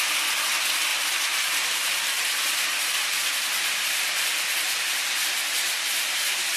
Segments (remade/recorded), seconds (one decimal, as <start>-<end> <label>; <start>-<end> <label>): 0.0-0.9 recorded; 0.9-4.9 remade; 4.9-6.6 recorded